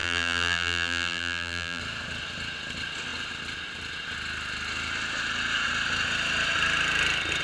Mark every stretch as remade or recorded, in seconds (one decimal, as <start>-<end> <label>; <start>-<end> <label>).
0.0-1.8 remade; 1.8-7.4 recorded